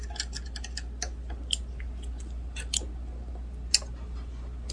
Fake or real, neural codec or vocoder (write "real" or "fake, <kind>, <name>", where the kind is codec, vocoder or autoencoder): real